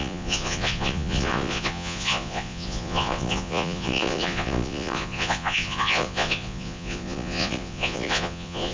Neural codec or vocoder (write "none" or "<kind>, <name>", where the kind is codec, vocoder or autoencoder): vocoder, Vocos